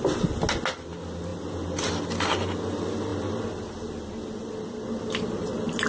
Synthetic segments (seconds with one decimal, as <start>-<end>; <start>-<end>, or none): 3.1-5.9